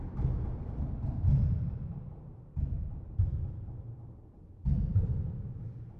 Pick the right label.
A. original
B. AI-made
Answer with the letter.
B